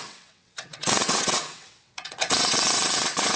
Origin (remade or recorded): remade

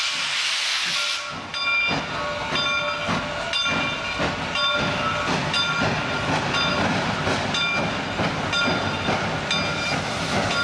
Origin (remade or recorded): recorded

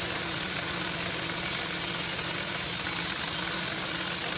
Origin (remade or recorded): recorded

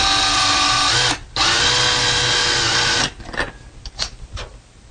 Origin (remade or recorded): recorded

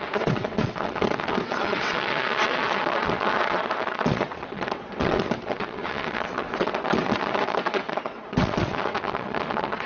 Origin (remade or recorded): remade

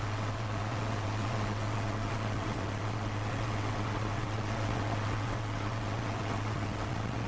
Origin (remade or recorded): remade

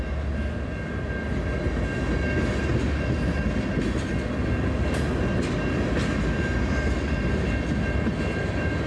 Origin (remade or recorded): recorded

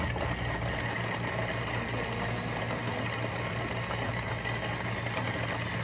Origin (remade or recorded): recorded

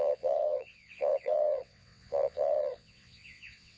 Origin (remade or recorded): remade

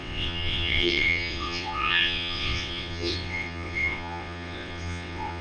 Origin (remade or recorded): remade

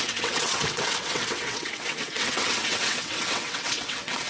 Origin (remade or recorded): remade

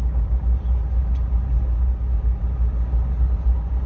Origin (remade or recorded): recorded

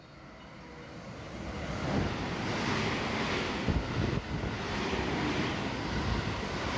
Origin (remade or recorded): recorded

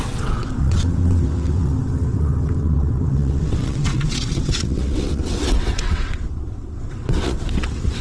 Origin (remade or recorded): remade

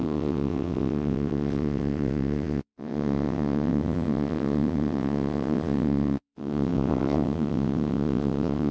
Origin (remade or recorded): remade